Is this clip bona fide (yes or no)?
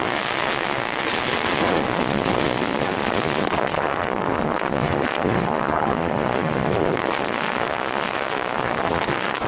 no